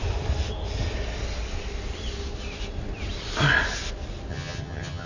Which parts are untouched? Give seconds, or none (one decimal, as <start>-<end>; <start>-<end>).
0.0-4.3